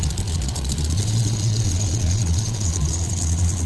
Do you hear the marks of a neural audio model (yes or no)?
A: yes